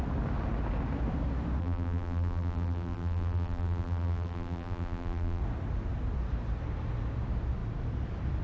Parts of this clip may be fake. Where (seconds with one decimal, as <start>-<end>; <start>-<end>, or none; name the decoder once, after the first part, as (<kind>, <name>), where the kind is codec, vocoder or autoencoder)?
1.6-5.4 (vocoder, BigVGAN v2)